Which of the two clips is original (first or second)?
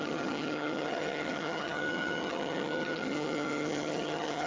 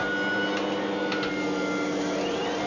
second